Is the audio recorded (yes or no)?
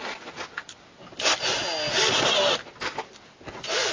yes